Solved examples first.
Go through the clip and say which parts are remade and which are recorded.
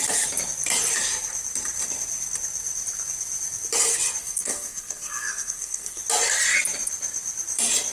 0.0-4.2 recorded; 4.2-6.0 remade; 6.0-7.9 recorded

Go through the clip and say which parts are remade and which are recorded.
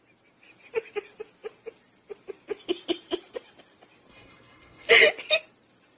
0.0-4.1 recorded; 4.1-4.9 remade; 4.9-6.0 recorded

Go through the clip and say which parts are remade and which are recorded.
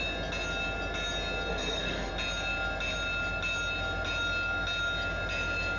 0.0-1.5 recorded; 1.5-2.1 remade; 2.1-5.8 recorded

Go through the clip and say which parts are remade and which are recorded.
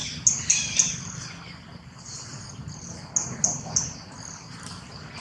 0.0-5.2 recorded